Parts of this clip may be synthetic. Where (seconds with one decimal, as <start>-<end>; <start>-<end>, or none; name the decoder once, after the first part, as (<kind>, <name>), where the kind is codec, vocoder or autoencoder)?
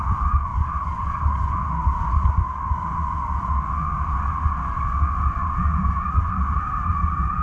none